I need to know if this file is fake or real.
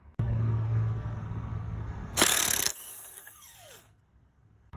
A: fake